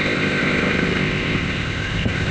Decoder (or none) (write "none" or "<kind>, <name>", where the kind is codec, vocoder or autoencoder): codec, ZipCodec